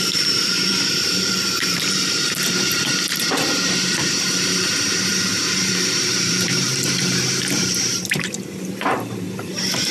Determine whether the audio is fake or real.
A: fake